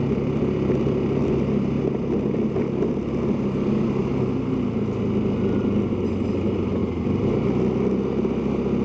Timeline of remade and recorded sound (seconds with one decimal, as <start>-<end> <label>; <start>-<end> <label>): 0.0-1.8 remade; 1.8-6.8 recorded; 6.8-7.3 remade; 7.3-8.8 recorded